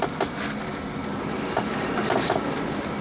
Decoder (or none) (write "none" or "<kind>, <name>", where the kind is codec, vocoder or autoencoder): none